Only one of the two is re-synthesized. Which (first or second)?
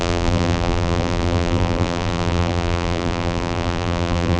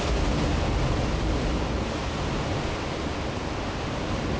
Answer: first